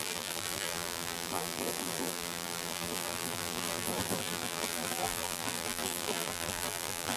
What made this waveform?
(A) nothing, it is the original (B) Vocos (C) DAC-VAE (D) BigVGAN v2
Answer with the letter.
D